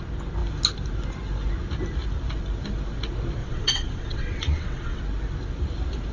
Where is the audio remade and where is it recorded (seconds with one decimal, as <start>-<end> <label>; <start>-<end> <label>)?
0.0-3.4 recorded; 3.4-5.0 remade; 5.0-6.1 recorded